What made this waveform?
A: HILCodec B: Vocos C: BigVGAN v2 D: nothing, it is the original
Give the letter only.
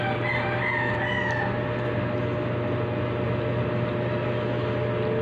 D